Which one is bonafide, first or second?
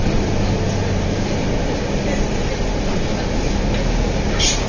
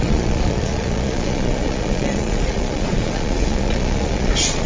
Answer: first